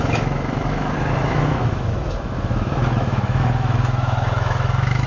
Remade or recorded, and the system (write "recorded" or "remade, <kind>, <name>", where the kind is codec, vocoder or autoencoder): remade, autoencoder, DAC-VAE